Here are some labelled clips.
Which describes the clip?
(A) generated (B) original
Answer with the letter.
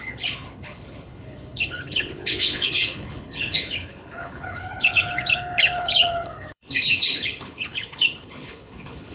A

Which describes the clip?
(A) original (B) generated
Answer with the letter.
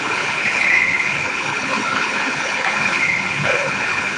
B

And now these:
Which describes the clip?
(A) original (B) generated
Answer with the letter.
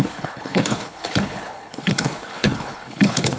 B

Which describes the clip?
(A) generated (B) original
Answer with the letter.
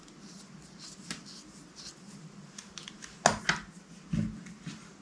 B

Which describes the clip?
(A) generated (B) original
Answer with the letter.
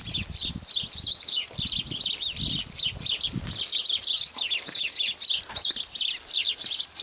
B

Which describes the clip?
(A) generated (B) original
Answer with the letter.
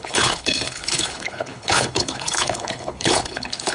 A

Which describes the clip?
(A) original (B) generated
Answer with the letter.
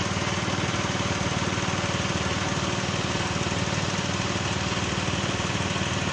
A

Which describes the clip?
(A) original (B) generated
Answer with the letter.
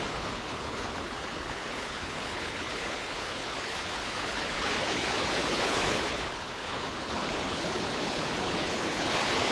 B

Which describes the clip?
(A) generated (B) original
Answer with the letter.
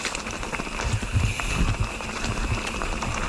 B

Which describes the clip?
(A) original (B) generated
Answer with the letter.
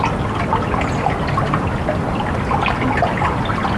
A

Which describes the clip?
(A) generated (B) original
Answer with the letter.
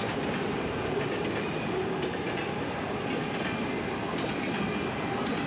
B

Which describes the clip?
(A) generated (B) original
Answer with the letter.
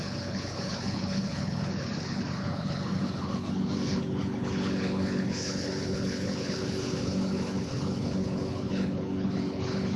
A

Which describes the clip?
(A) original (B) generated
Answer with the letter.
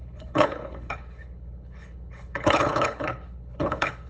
B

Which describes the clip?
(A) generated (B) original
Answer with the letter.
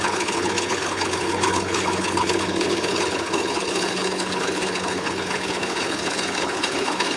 A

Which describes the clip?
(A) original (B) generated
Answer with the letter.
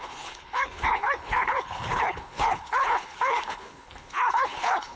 B